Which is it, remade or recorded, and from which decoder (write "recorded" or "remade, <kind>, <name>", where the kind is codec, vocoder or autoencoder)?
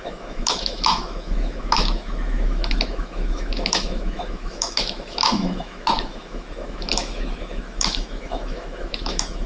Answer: remade, autoencoder, DAC-VAE